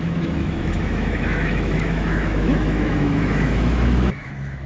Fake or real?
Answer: fake